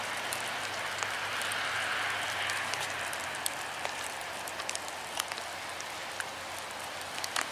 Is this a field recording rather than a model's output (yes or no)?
yes